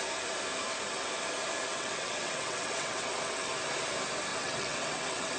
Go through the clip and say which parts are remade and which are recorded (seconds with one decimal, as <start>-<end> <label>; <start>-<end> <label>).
0.0-1.7 recorded; 1.7-3.5 remade; 3.5-4.3 recorded; 4.3-5.4 remade